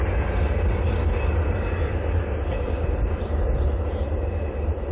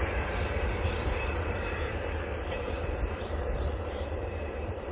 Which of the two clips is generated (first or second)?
second